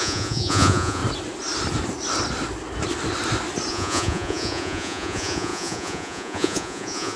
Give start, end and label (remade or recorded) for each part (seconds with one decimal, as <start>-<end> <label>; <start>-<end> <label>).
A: 0.0-1.0 remade; 1.0-3.7 recorded; 3.7-7.2 remade